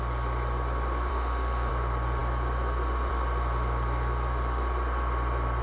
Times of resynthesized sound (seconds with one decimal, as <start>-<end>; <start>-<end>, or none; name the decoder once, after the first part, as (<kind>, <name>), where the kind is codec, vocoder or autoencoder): 1.1-1.7 (autoencoder, DAC-VAE)